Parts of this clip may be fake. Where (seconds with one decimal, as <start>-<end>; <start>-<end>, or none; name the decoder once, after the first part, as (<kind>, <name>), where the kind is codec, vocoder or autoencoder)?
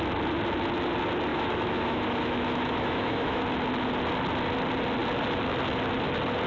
1.3-3.4 (autoencoder, DAC-VAE)